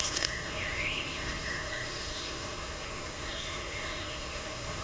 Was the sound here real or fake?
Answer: fake